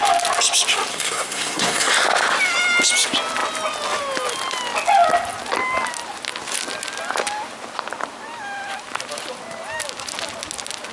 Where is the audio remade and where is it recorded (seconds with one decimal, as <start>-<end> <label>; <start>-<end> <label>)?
0.0-0.9 recorded; 0.9-1.9 remade; 1.9-10.9 recorded